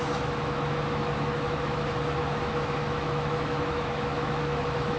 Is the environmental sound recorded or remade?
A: remade